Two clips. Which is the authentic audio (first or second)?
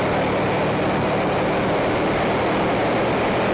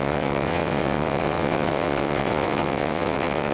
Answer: first